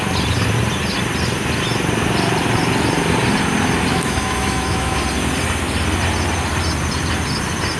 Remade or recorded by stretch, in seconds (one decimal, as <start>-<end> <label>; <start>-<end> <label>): 0.0-3.9 recorded; 3.9-5.0 remade; 5.0-7.8 recorded